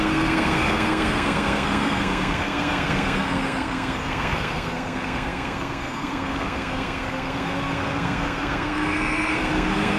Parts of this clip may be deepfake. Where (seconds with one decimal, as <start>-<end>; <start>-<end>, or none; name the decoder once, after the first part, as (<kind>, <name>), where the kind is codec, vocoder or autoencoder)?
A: 0.0-10.0 (codec, SNAC)